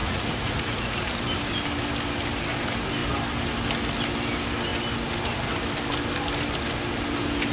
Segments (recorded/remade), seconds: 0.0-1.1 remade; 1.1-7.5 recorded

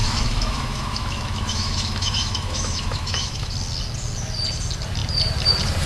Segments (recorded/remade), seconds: 0.0-3.5 remade; 3.5-5.9 recorded

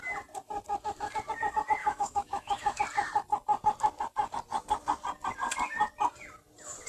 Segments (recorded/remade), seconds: 0.0-1.8 recorded; 1.8-2.8 remade; 2.8-6.9 recorded